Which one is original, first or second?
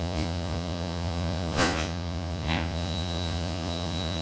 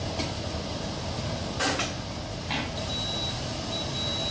second